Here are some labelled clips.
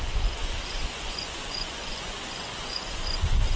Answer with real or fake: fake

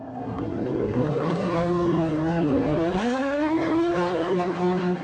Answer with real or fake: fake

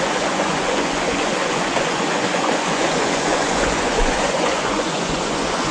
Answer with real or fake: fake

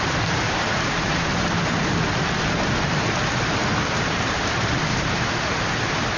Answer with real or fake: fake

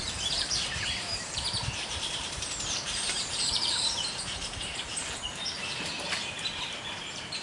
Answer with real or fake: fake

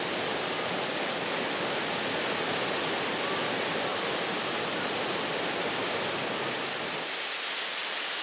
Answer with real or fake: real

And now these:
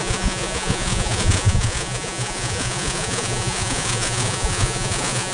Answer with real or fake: fake